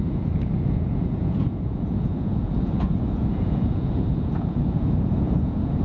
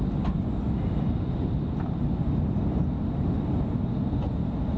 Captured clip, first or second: second